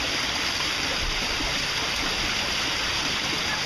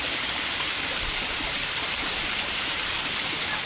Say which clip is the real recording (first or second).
first